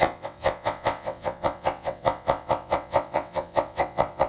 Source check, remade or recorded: remade